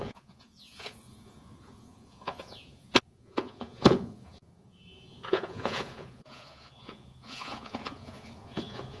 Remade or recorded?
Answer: remade